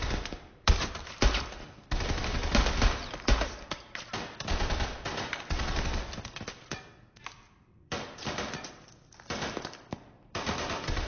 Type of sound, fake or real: fake